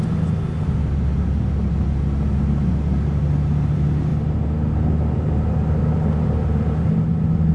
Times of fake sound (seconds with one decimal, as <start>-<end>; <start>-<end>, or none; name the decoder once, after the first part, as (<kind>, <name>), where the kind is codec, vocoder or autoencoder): none